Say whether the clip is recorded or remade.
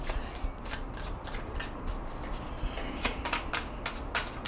recorded